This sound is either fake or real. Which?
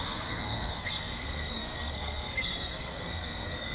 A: fake